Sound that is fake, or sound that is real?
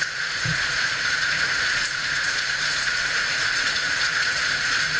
fake